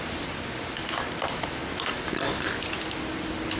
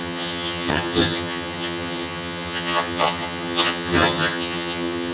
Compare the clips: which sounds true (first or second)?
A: first